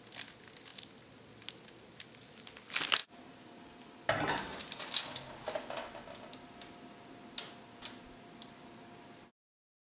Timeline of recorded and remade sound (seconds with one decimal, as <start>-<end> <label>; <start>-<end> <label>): 0.0-3.0 recorded; 3.0-4.9 remade; 4.9-9.8 recorded